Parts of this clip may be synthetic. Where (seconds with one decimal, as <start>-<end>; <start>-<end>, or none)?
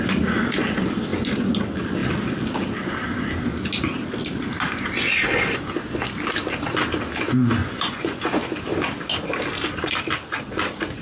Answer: 7.6-8.2